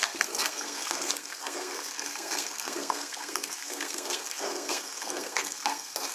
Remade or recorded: remade